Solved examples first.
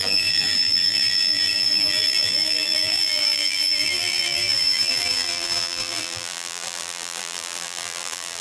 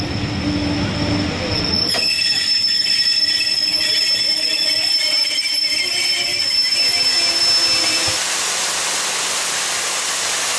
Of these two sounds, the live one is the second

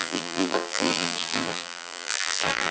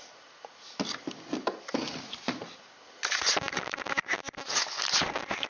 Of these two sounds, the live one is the second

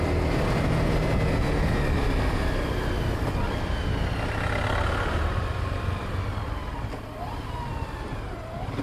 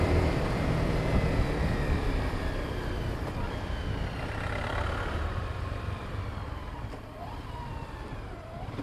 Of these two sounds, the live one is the first